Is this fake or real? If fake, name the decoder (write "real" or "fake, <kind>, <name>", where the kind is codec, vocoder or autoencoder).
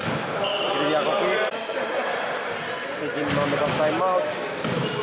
real